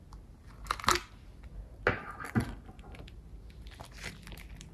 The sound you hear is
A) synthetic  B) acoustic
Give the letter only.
B